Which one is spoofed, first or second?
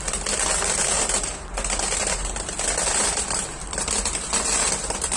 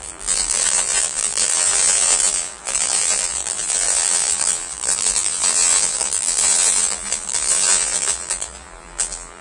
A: second